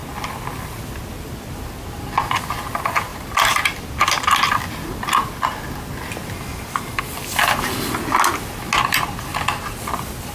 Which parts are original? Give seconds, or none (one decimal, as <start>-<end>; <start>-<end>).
0.0-10.3